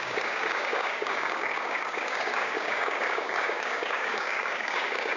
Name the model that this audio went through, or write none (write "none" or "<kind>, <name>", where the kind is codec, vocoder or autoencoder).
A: codec, DAC